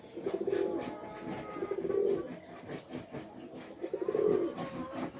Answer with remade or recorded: recorded